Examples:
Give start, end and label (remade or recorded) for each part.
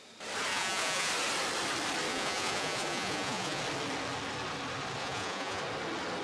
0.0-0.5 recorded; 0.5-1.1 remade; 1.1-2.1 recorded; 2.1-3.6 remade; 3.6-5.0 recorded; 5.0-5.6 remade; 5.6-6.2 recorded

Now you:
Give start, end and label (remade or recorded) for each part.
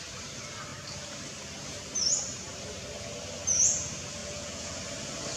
0.0-4.2 recorded; 4.2-4.8 remade; 4.8-5.4 recorded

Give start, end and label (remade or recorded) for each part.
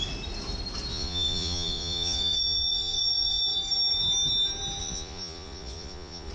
0.0-0.9 recorded; 0.9-3.4 remade; 3.4-4.8 recorded; 4.8-6.3 remade